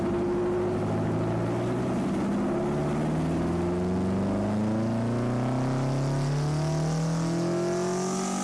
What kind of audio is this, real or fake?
real